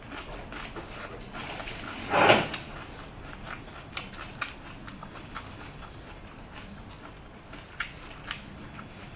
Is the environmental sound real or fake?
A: real